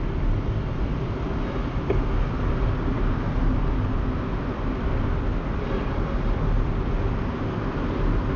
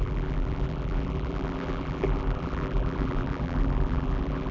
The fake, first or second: second